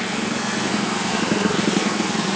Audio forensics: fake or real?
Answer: fake